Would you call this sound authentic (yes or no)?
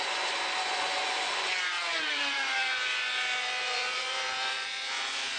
no